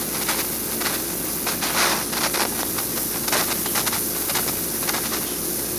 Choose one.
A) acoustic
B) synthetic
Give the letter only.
A